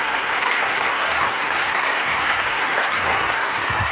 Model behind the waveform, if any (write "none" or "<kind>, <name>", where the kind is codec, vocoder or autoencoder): codec, SNAC